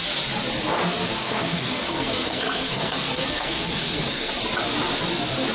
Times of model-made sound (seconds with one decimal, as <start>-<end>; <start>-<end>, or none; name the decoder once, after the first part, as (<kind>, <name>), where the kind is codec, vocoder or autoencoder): 1.2-4.3 (codec, SNAC)

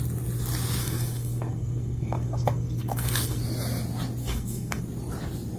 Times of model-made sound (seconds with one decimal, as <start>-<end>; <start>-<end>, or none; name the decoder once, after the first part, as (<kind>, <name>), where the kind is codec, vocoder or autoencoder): 0.8-3.4 (codec, SNAC); 4.2-4.8